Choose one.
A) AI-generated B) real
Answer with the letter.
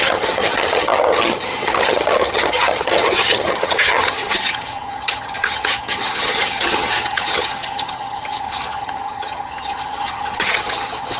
A